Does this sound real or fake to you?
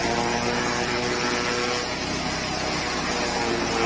real